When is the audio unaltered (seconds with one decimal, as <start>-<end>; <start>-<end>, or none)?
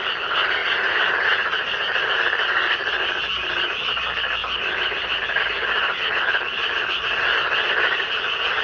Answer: 0.0-8.6